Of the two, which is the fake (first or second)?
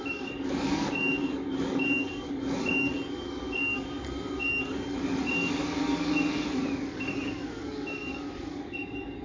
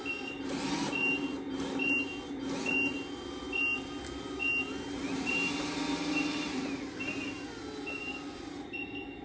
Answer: first